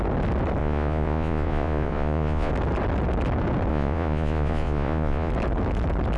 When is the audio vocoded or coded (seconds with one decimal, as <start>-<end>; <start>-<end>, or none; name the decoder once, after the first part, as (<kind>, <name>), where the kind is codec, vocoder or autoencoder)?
0.6-2.5 (vocoder, Vocos); 3.7-5.3